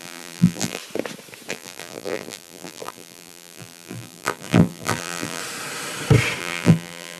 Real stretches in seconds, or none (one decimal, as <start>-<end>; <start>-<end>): 0.8-1.5; 5.4-6.4

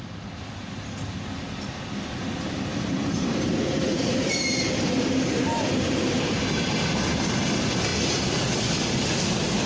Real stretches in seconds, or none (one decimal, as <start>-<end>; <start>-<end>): 0.0-2.7; 6.4-9.7

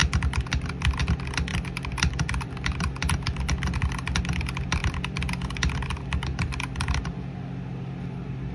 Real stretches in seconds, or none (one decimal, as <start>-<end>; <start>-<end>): 1.0-1.5; 4.2-4.8; 7.0-8.5

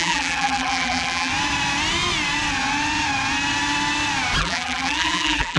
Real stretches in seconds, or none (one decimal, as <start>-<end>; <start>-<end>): 1.3-4.4

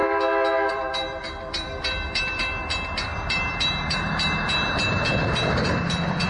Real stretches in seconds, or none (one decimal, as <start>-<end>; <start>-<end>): 0.0-0.7

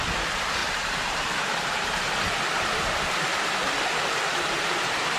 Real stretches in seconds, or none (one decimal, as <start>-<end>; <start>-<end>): 3.3-4.1

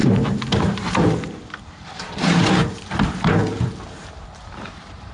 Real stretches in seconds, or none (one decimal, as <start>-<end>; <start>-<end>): 3.4-4.2